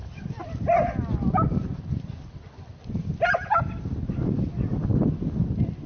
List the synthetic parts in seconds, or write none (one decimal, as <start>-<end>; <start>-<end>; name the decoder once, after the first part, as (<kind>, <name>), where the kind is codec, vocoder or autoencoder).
none